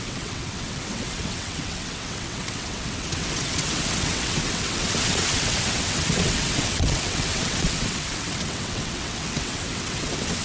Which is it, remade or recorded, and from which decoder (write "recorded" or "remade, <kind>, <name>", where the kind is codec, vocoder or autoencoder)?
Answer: remade, vocoder, WaveNeXt